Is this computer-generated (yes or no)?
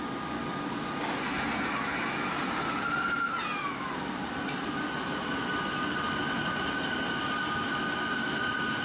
no